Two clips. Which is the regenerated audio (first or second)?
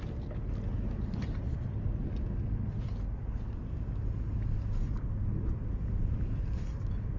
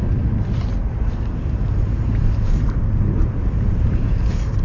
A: second